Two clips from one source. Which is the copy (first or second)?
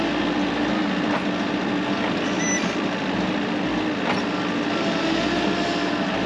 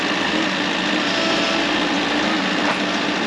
second